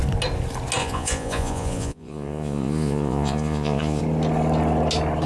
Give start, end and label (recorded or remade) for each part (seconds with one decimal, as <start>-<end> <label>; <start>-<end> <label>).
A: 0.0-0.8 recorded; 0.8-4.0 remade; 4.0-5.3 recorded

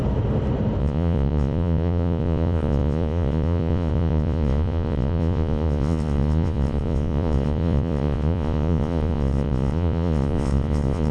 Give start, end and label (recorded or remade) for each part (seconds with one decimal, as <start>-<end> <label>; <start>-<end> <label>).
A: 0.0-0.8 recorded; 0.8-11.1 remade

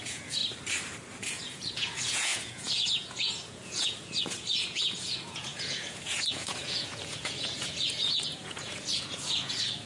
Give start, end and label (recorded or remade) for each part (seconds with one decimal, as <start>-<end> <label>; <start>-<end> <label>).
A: 0.0-0.4 remade; 0.4-1.2 recorded; 1.2-9.9 remade